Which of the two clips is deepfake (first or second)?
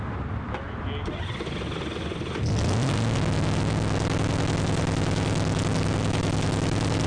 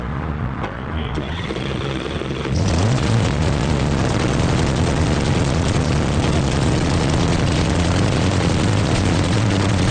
second